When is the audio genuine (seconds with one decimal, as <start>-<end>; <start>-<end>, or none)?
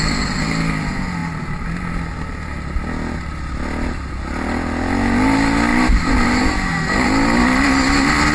0.0-5.7; 6.4-8.3